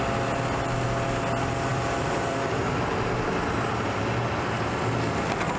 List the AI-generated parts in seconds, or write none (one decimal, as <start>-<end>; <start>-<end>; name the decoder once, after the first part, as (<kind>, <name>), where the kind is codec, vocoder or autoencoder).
1.7-2.8 (vocoder, BigVGAN v2)